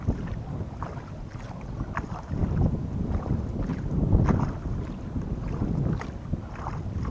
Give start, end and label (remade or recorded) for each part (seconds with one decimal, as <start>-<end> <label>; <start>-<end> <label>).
0.0-7.1 recorded